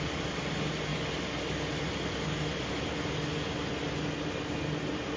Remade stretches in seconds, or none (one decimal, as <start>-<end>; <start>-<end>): none

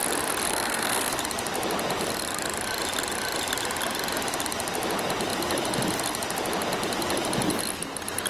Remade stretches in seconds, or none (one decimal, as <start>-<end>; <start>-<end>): 0.5-1.1

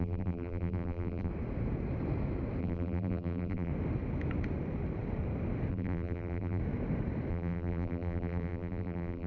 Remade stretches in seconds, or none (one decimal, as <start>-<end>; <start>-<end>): 0.0-1.3; 2.6-3.7; 5.7-6.6; 7.3-9.3

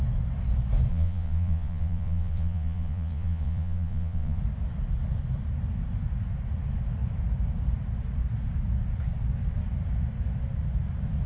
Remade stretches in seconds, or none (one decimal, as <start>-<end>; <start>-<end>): 0.9-4.4

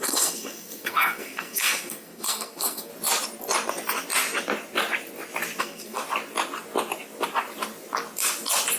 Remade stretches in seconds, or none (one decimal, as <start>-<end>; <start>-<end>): 0.0-2.9; 5.6-6.0

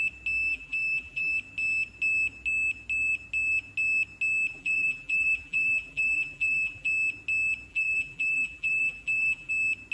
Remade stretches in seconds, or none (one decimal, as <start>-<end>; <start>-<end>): 0.5-1.3; 4.5-6.9; 7.7-9.5

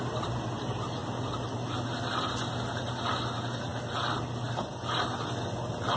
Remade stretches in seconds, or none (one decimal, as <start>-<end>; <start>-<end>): none

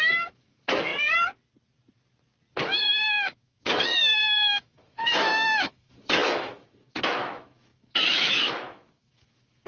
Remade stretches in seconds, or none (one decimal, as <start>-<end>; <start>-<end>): 0.0-0.9; 2.6-9.7